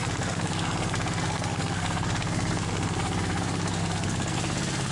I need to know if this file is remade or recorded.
remade